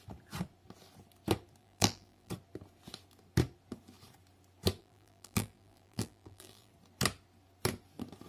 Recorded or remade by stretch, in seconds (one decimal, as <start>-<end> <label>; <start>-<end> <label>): 0.0-1.6 recorded; 1.6-2.3 remade; 2.3-4.8 recorded; 4.8-6.7 remade; 6.7-8.3 recorded